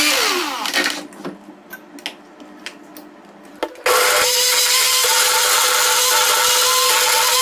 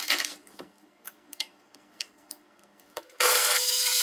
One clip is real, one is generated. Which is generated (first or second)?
second